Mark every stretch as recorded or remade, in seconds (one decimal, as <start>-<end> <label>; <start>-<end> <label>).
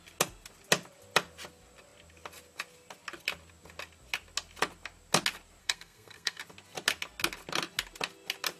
0.0-5.6 recorded; 5.6-6.4 remade; 6.4-8.6 recorded